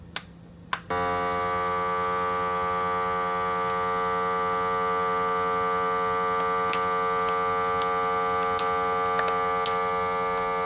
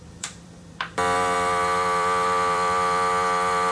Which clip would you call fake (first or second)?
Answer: second